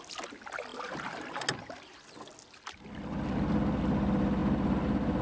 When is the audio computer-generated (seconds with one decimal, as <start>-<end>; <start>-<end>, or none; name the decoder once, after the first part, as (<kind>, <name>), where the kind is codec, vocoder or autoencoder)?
none